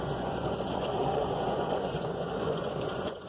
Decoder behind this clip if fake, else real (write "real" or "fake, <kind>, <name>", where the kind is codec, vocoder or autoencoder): fake, vocoder, Vocos